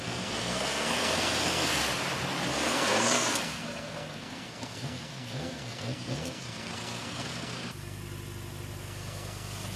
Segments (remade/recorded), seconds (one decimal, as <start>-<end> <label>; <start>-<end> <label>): 0.0-1.8 remade; 1.8-2.5 recorded; 2.5-8.0 remade; 8.0-8.8 recorded; 8.8-9.8 remade